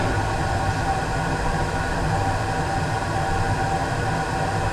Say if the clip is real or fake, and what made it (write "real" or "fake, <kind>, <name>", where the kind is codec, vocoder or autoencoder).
fake, vocoder, BigVGAN v2